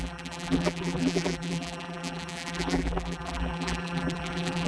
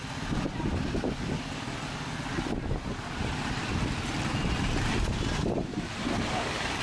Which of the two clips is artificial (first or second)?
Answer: first